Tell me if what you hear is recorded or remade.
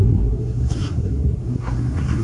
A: remade